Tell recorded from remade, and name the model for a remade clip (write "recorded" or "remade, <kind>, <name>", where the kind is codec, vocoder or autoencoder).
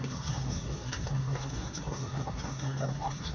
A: remade, codec, SNAC